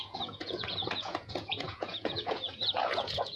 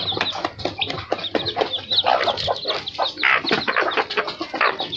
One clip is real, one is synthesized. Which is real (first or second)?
second